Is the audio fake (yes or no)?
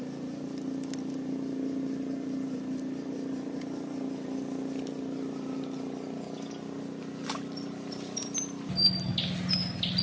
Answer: no